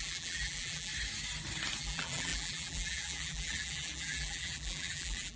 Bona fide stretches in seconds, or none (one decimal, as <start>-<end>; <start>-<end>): 0.9-1.8